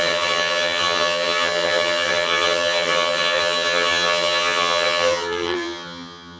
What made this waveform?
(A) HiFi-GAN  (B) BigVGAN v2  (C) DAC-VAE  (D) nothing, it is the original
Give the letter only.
A